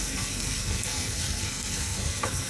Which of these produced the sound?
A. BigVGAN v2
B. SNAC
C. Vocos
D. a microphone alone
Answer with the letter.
B